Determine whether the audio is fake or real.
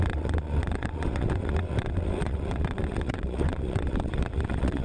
fake